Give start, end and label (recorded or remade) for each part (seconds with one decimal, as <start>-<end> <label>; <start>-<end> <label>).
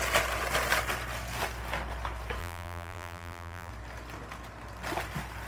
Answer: 0.0-2.4 recorded; 2.4-3.7 remade; 3.7-5.5 recorded